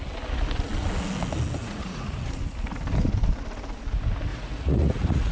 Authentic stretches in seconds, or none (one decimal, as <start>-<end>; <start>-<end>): 0.0-1.6; 2.3-4.3